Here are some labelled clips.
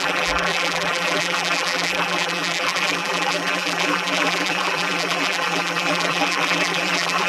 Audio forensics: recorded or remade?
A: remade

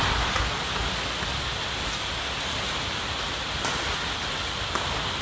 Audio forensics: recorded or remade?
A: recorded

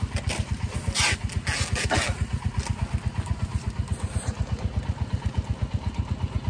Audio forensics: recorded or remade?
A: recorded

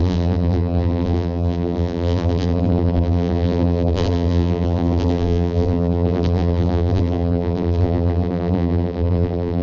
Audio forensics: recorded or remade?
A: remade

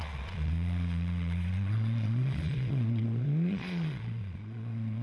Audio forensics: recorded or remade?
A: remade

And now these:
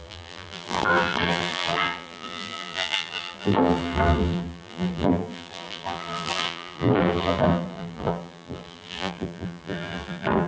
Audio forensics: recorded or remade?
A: remade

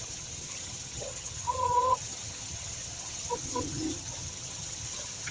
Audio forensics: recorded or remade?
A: remade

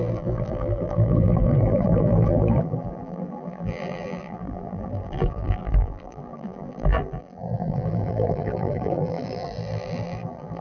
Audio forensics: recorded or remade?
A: remade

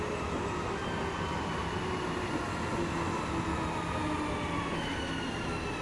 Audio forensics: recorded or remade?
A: recorded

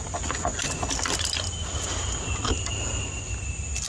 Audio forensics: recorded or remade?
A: recorded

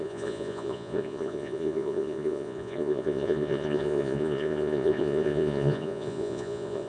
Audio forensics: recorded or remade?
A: remade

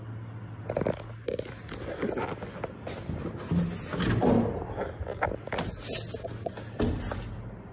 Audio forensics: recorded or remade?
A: recorded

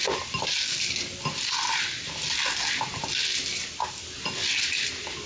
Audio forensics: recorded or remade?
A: recorded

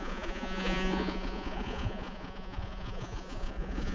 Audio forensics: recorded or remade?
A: remade